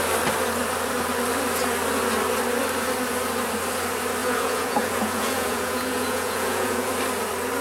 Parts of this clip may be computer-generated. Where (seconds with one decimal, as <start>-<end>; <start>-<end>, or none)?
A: 4.2-6.9